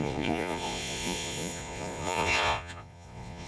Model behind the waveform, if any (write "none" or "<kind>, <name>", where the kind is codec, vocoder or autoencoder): vocoder, Vocos